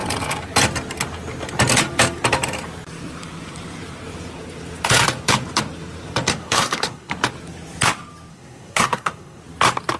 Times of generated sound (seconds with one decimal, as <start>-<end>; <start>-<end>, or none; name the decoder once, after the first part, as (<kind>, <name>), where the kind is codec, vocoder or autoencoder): 6.3-7.1 (codec, SNAC); 8.3-9.4